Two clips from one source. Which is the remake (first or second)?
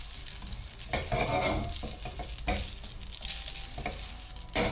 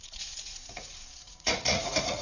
second